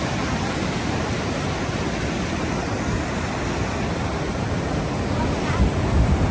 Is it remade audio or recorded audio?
recorded